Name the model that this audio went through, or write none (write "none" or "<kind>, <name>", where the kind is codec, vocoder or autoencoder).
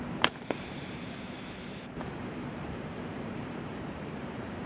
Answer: vocoder, BigVGAN v2